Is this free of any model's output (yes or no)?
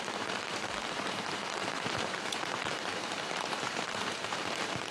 no